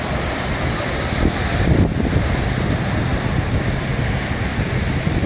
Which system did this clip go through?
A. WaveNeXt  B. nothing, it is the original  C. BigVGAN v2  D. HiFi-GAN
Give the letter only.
B